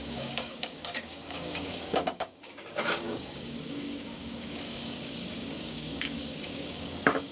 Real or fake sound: fake